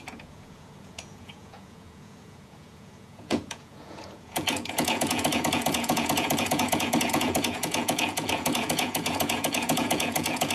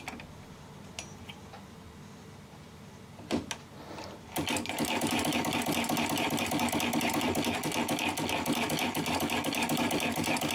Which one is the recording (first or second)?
second